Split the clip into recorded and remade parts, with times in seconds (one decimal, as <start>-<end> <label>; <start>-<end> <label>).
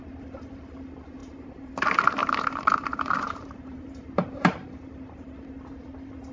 0.0-1.2 recorded; 1.2-1.7 remade; 1.7-2.2 recorded; 2.2-5.2 remade; 5.2-6.3 recorded